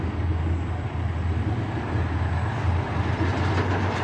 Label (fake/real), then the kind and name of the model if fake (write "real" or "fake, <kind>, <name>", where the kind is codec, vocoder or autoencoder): real